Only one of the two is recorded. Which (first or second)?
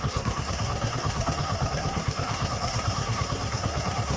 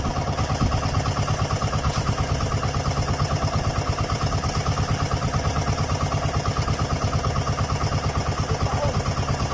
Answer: second